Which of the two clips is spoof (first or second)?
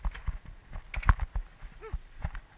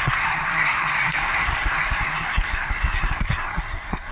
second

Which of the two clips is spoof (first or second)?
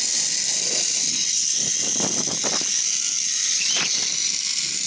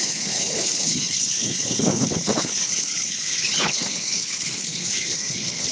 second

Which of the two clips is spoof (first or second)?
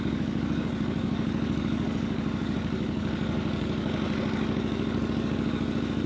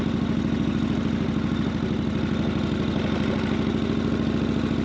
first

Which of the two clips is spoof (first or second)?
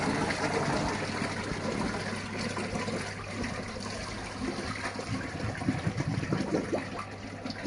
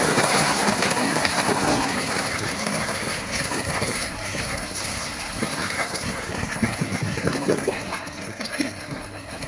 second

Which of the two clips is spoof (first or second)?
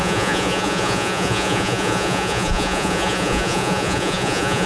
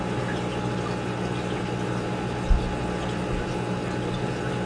first